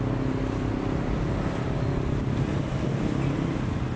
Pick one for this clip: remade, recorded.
recorded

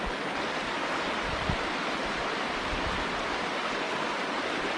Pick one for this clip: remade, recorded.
recorded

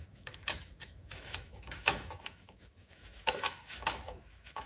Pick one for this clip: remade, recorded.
remade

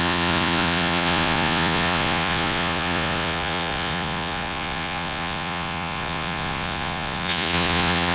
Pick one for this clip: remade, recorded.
remade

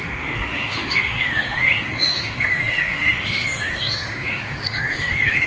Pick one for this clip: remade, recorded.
remade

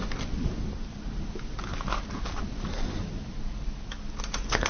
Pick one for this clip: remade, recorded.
recorded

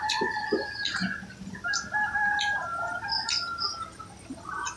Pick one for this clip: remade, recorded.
recorded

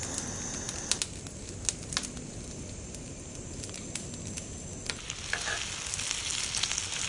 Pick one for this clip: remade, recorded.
recorded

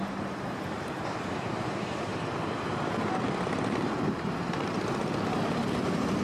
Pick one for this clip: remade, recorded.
remade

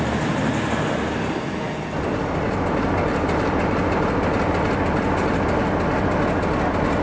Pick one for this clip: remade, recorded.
recorded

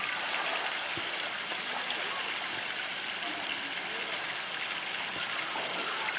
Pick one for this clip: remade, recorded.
recorded